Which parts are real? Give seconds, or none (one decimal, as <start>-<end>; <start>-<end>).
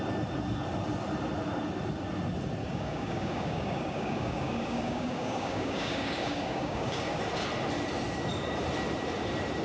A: 0.0-2.6; 7.2-9.6